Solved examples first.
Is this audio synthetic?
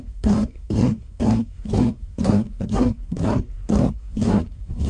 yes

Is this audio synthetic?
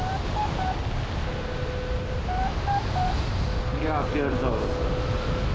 no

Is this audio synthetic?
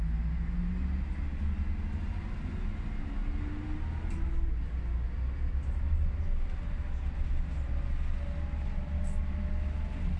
no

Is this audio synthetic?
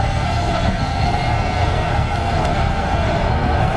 yes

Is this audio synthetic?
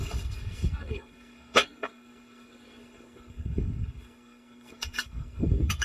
yes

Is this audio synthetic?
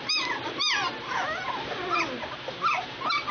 no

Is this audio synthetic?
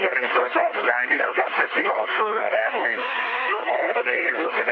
yes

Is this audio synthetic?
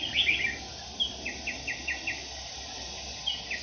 no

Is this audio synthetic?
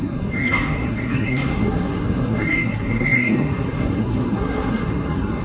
yes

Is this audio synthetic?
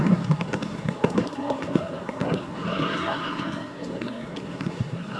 yes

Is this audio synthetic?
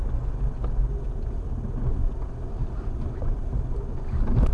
no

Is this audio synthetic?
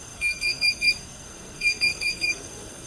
yes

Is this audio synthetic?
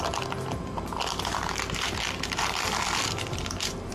no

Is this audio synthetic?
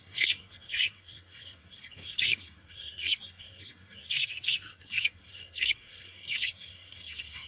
yes